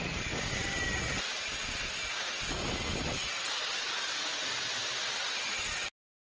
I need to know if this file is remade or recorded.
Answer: recorded